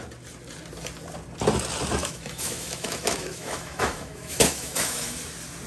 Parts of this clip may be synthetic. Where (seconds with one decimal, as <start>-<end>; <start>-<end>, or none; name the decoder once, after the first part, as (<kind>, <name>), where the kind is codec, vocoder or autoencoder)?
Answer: 2.0-5.2 (autoencoder, DAC-VAE)